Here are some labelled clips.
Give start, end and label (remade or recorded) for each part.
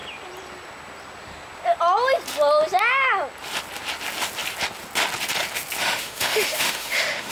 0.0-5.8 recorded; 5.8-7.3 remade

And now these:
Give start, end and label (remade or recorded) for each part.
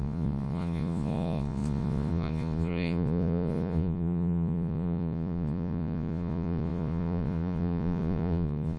0.0-8.8 remade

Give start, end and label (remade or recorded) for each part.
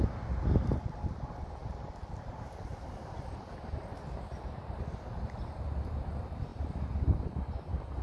0.0-2.7 recorded; 2.7-4.6 remade; 4.6-8.0 recorded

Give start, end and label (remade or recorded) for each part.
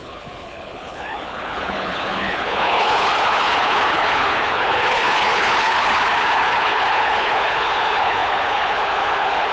0.0-9.5 remade